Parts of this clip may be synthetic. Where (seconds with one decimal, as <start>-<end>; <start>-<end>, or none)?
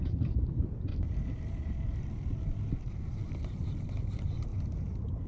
0.0-0.9; 4.1-4.5